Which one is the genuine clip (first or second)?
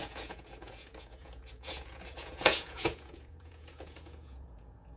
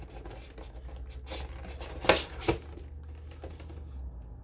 second